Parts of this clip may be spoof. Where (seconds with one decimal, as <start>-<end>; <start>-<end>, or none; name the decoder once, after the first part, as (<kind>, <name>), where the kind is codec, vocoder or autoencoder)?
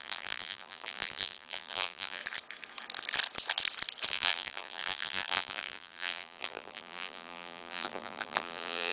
0.0-2.2 (vocoder, BigVGAN v2); 4.1-8.9